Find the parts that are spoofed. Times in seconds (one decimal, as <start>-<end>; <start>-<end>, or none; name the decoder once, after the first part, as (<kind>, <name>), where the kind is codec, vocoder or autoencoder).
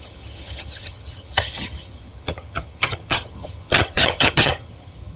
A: 0.0-5.2 (vocoder, HiFi-GAN)